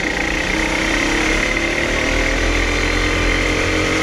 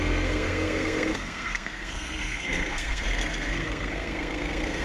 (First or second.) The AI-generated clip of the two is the second